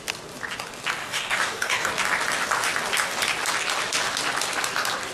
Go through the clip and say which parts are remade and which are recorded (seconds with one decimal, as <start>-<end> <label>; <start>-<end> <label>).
0.0-1.0 recorded; 1.0-1.9 remade; 1.9-5.1 recorded